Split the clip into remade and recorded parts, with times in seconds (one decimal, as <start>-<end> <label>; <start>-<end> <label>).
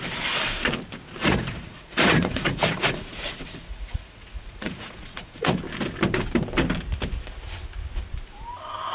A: 0.0-1.2 recorded; 1.2-5.6 remade; 5.6-8.9 recorded